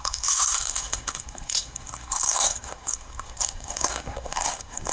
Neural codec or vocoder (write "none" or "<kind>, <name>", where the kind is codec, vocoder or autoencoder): codec, SNAC